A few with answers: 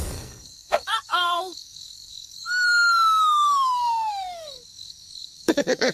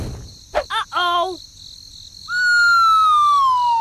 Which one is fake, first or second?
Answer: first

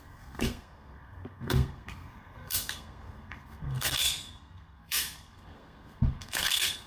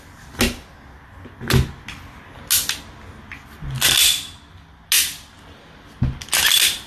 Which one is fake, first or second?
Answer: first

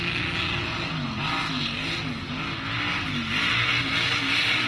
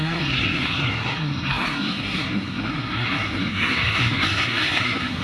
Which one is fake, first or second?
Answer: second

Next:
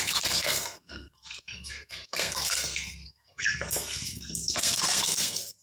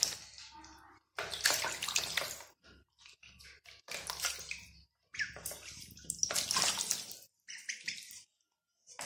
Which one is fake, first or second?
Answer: first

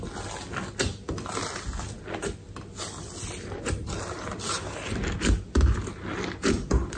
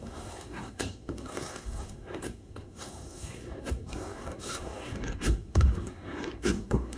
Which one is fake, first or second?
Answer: second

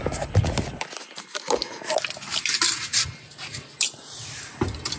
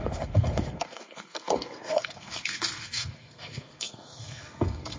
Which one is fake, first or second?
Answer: second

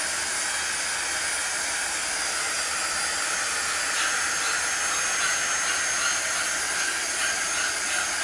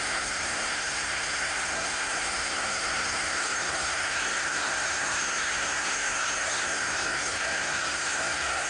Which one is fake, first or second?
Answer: second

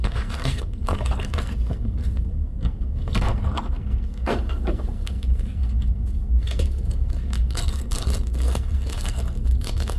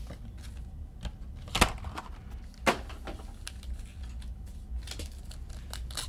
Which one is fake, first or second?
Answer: first